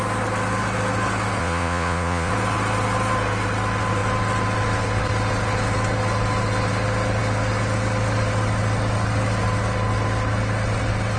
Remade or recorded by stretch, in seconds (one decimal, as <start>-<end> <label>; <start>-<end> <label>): 0.0-1.4 recorded; 1.4-2.3 remade; 2.3-11.2 recorded